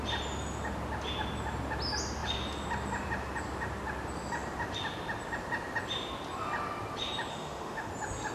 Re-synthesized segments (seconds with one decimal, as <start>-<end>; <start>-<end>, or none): 7.3-7.9